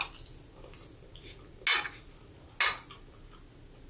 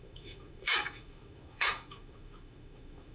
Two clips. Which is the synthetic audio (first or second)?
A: second